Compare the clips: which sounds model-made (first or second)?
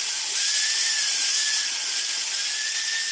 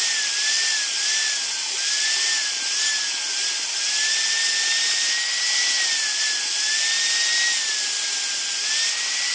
first